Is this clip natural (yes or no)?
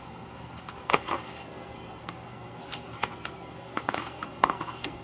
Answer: no